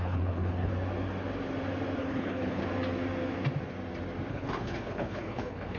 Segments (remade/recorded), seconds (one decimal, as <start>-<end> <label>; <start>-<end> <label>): 0.0-0.7 remade; 0.7-2.0 recorded; 2.0-2.6 remade; 2.6-4.3 recorded; 4.3-5.8 remade